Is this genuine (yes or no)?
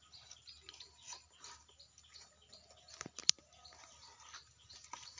yes